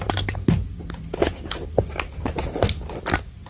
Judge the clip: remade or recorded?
recorded